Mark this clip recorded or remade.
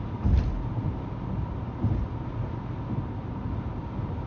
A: recorded